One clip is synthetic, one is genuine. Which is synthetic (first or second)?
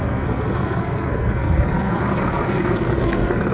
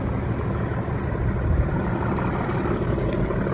first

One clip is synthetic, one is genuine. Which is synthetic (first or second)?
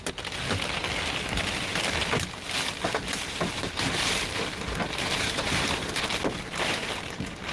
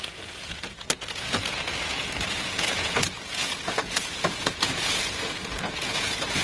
second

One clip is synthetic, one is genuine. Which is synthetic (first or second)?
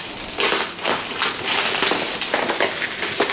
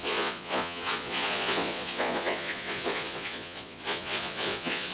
second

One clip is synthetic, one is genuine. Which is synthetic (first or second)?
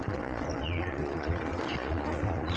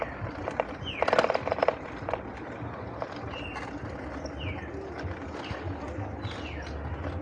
first